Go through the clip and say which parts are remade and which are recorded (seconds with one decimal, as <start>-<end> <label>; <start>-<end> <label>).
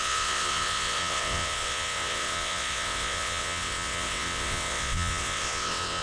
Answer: 0.0-6.0 remade